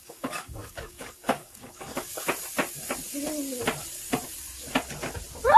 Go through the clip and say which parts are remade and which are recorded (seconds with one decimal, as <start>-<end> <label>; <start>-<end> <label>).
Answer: 0.0-2.1 remade; 2.1-5.6 recorded